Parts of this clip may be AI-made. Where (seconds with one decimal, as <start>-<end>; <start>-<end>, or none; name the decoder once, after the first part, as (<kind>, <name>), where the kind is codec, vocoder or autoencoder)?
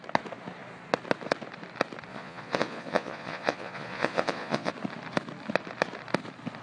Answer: 2.1-4.7 (vocoder, Vocos)